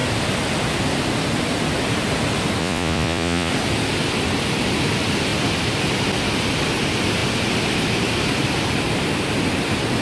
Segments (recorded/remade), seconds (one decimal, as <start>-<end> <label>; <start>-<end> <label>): 0.0-2.6 recorded; 2.6-3.5 remade; 3.5-10.0 recorded